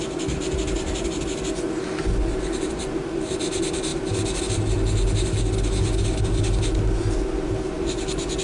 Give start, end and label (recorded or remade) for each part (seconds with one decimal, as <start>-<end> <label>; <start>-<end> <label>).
0.0-3.9 recorded; 3.9-4.4 remade; 4.4-8.4 recorded

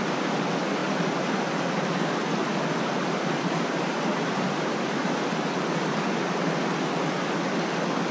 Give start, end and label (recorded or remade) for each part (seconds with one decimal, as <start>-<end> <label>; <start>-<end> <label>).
0.0-0.8 recorded; 0.8-1.6 remade; 1.6-4.1 recorded; 4.1-6.1 remade; 6.1-8.1 recorded

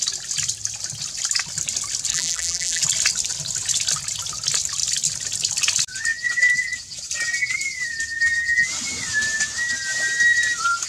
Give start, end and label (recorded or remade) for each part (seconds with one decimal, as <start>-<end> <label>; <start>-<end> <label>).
0.0-2.1 recorded; 2.1-2.8 remade; 2.8-10.9 recorded

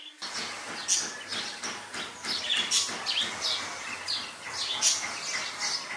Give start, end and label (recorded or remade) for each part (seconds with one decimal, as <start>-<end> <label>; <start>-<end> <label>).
0.0-1.3 recorded; 1.3-4.7 remade; 4.7-6.0 recorded

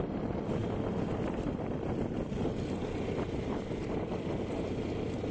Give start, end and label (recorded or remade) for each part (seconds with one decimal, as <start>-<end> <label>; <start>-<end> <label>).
0.0-5.3 recorded

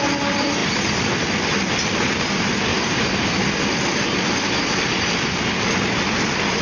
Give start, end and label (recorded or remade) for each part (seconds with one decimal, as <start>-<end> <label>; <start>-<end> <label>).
0.0-2.7 recorded; 2.7-3.3 remade; 3.3-6.6 recorded